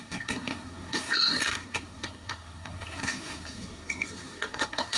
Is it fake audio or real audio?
fake